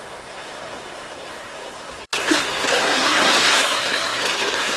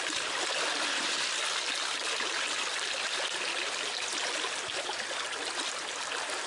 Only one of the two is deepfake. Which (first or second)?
first